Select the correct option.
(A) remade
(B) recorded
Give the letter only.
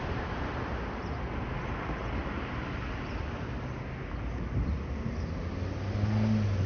B